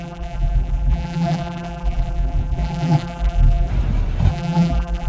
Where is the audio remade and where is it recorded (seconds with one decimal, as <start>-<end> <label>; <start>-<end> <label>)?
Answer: 0.0-3.7 remade; 3.7-4.3 recorded; 4.3-5.1 remade